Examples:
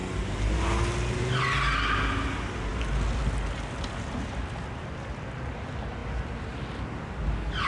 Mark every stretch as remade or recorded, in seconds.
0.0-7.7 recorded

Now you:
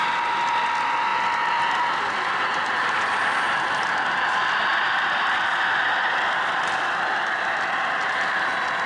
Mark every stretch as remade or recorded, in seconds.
0.0-1.1 recorded; 1.1-1.6 remade; 1.6-2.5 recorded; 2.5-7.2 remade; 7.2-8.9 recorded

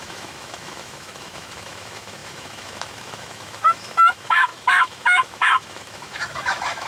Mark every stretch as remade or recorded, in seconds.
0.0-6.9 remade